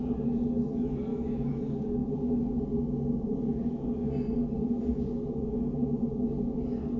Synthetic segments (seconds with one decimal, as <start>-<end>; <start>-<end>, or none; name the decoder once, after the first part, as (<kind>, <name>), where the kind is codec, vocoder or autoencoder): 1.1-1.6 (autoencoder, DAC-VAE)